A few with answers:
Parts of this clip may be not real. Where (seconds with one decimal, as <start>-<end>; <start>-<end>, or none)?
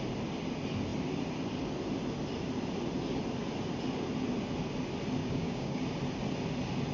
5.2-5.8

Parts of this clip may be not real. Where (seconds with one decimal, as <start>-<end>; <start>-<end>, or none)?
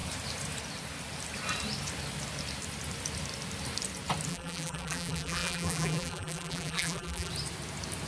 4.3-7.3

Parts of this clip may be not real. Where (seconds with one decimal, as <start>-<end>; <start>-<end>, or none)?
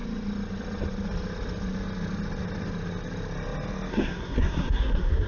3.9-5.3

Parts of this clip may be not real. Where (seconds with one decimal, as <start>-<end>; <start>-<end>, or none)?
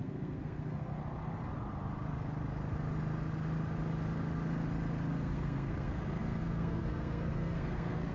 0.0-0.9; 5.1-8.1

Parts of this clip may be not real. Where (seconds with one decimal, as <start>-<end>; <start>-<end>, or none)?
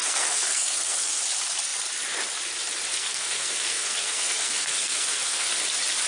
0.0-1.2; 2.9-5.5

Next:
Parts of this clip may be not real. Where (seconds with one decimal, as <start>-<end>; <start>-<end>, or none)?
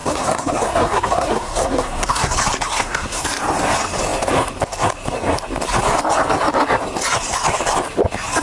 0.0-2.3; 2.7-3.2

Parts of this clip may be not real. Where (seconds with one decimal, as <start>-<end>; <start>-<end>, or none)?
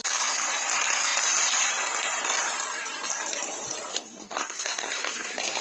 3.9-5.6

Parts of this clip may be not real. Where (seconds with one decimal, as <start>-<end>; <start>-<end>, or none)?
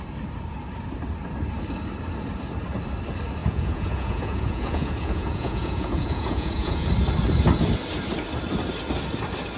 3.4-6.9